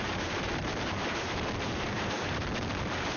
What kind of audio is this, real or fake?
fake